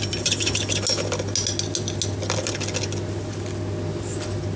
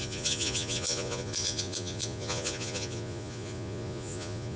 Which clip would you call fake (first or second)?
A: second